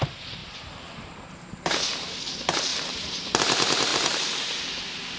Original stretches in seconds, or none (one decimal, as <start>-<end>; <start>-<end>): 0.0-0.4; 1.2-2.7; 3.4-3.9; 4.6-5.2